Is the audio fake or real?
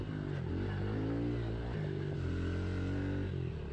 real